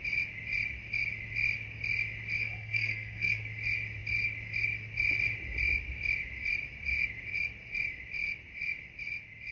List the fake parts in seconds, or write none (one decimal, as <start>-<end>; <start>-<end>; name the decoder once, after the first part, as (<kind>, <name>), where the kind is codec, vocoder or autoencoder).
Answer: 2.4-3.4 (codec, SNAC)